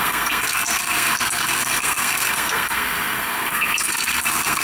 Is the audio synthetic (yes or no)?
yes